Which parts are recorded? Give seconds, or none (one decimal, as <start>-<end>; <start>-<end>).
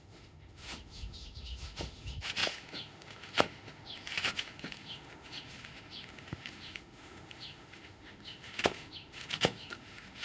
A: none